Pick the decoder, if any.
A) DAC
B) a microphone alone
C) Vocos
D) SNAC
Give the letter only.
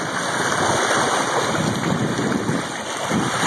B